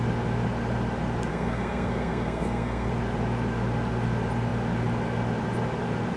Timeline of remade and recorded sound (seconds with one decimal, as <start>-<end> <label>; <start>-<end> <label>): 0.0-1.3 recorded; 1.3-2.9 remade; 2.9-6.2 recorded